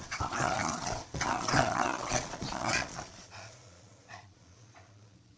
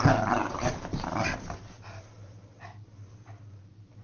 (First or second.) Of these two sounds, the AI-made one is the first